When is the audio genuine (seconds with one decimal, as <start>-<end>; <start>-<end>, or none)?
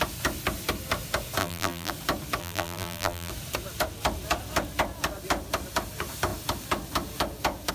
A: 0.0-1.4; 1.9-2.4; 3.3-7.7